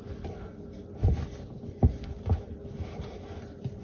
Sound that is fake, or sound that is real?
real